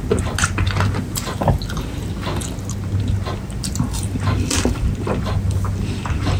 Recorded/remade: recorded